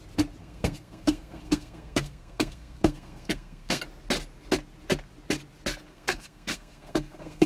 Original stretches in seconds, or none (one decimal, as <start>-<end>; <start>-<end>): 0.0-0.4; 3.8-5.9